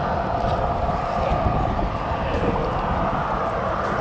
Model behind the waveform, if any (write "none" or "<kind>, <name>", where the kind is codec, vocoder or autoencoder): none